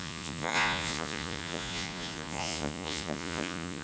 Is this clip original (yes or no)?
no